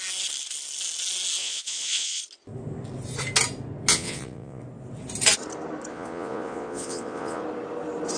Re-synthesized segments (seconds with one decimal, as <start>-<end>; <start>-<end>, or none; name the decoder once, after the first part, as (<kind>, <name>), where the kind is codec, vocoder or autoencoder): 1.4-2.2 (vocoder, Vocos); 3.9-4.6; 5.9-7.4